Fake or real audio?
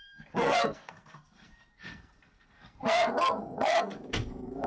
fake